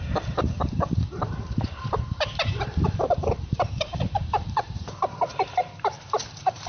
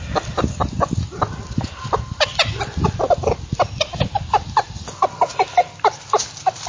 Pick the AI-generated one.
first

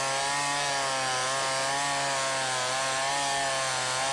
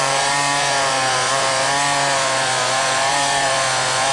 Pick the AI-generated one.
second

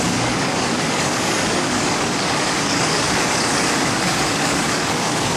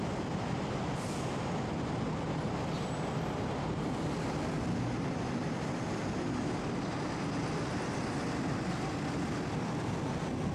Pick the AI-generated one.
first